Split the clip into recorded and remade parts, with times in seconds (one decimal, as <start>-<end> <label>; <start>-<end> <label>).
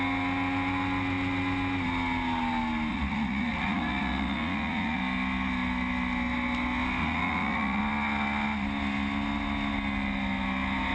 0.0-2.9 recorded; 2.9-5.0 remade; 5.0-7.0 recorded; 7.0-7.8 remade; 7.8-10.9 recorded